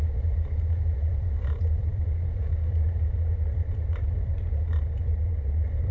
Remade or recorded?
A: remade